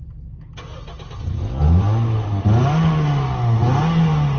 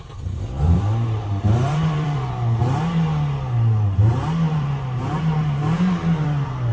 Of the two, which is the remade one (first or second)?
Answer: second